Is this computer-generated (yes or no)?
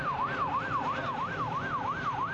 yes